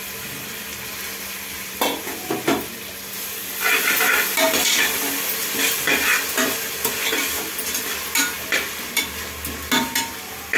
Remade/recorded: recorded